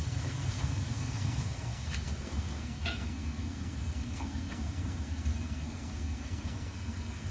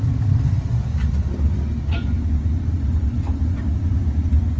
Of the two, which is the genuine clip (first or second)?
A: second